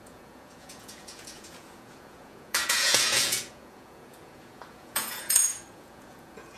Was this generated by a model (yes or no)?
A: yes